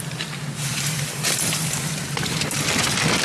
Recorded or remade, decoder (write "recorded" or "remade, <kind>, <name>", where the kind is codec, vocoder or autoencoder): recorded